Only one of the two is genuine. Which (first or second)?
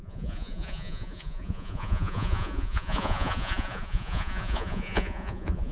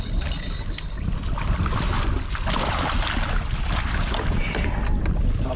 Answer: second